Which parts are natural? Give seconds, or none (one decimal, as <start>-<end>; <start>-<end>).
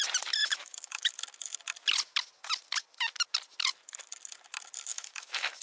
0.0-0.4; 1.1-4.9